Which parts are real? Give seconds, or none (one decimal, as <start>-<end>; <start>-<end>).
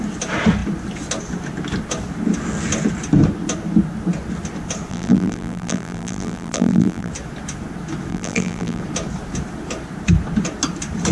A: 0.0-4.9; 7.1-8.1; 8.8-11.1